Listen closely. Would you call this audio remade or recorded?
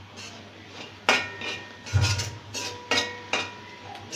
recorded